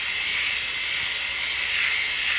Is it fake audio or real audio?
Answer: real